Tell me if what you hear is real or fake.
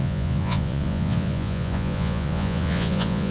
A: fake